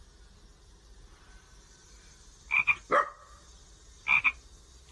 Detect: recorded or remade recorded